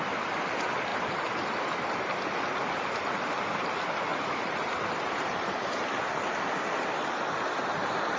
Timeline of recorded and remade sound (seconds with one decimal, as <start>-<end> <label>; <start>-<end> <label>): 0.0-4.1 recorded; 4.1-6.4 remade; 6.4-8.2 recorded